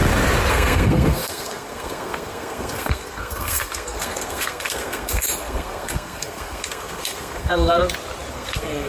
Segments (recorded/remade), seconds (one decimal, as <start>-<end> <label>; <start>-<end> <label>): 0.0-0.5 recorded; 0.5-7.8 remade; 7.8-8.3 recorded; 8.3-8.9 remade